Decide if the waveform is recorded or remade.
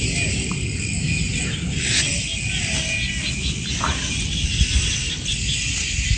recorded